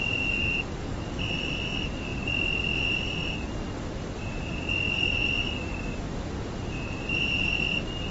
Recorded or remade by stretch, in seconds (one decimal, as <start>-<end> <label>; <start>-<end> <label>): 0.0-2.1 remade; 2.1-6.9 recorded; 6.9-8.1 remade